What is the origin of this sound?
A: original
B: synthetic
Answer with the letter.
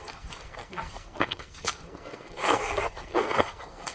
B